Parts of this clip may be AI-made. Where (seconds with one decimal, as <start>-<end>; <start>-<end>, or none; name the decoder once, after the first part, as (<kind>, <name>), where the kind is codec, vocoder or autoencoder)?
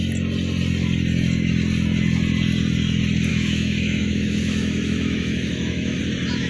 3.3-6.0 (autoencoder, DAC-VAE)